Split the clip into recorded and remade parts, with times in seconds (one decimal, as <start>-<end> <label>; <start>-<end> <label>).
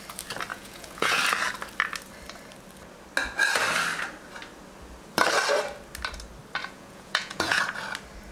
0.0-0.5 recorded; 0.5-1.2 remade; 1.2-6.6 recorded; 6.6-7.6 remade; 7.6-8.3 recorded